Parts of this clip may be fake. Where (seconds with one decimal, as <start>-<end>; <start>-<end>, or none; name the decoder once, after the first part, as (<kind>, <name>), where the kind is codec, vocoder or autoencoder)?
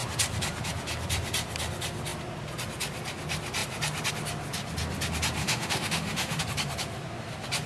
5.4-6.4 (autoencoder, DAC-VAE)